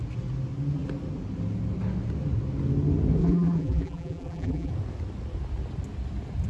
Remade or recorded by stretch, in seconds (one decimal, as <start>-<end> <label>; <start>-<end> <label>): 0.0-3.2 recorded; 3.2-4.7 remade; 4.7-6.5 recorded